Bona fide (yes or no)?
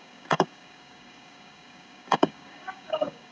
no